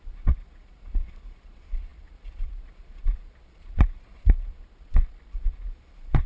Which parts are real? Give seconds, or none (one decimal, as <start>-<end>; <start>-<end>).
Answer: none